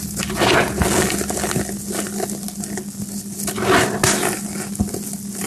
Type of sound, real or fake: real